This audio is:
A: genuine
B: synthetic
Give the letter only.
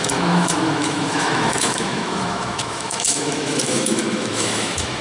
B